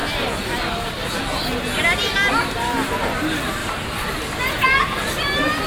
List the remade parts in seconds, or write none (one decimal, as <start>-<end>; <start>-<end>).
3.6-4.4